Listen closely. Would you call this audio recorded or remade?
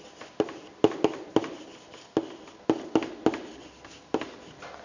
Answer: recorded